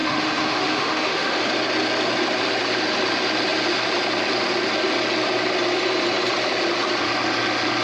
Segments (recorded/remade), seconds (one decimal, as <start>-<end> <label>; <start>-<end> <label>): 0.0-1.4 remade; 1.4-7.8 recorded